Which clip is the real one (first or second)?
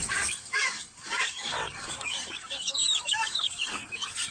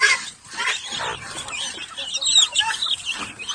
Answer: second